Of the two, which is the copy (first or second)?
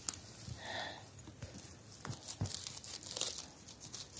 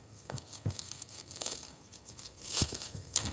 second